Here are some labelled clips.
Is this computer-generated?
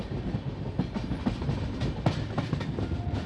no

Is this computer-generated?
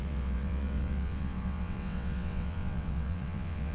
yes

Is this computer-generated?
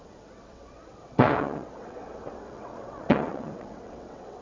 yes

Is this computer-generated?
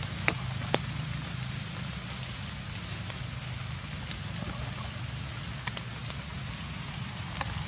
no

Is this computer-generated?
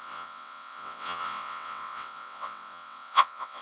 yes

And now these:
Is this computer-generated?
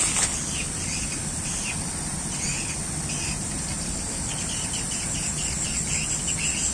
no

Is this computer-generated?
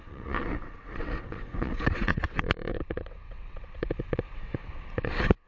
yes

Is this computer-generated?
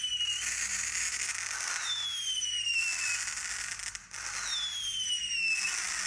no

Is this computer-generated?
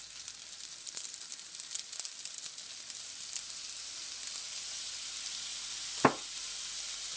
no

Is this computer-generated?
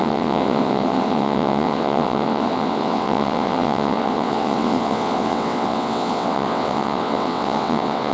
yes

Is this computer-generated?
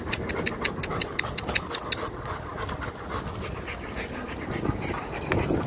no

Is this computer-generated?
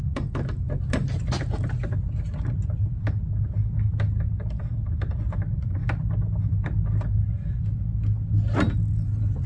no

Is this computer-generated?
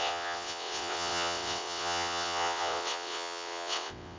yes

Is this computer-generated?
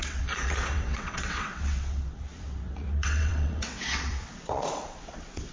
yes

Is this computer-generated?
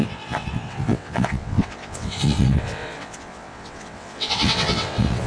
yes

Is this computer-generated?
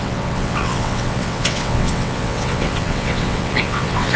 yes